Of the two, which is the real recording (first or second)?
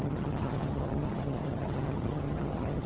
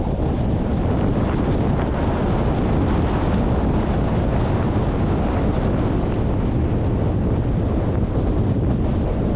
second